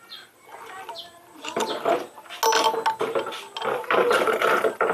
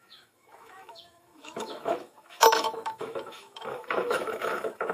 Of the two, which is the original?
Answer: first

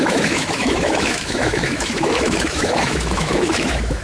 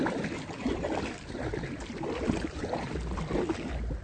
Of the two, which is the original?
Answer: second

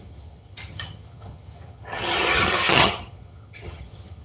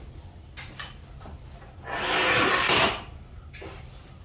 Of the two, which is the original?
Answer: second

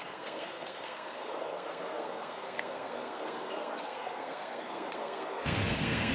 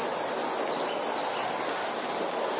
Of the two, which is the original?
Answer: second